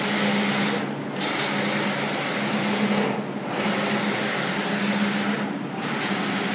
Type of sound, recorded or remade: recorded